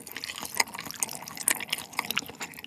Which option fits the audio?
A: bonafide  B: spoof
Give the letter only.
A